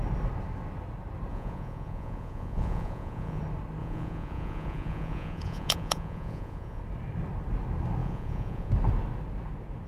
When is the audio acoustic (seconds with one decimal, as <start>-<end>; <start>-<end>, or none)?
0.0-1.3; 3.4-3.8; 6.8-8.0; 8.7-9.9